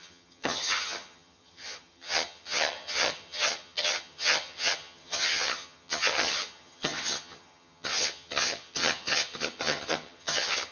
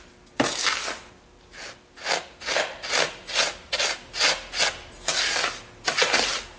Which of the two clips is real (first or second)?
second